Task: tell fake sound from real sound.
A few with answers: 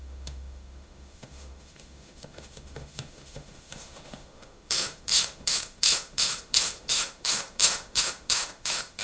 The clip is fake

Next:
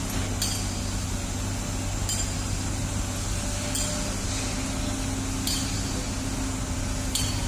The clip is real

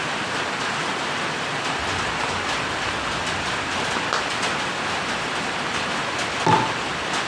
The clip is real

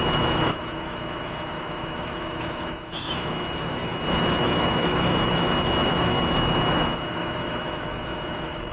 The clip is fake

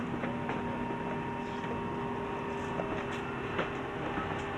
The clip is real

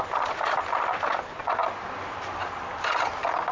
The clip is real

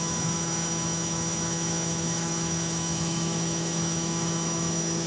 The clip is fake